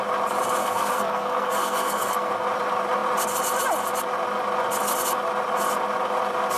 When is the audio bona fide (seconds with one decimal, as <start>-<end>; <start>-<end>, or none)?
0.0-0.6; 2.3-6.6